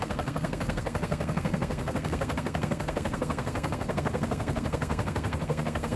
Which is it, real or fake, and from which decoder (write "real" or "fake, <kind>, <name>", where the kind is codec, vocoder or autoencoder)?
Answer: fake, codec, SNAC